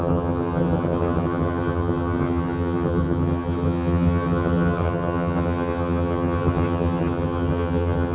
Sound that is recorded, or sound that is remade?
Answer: remade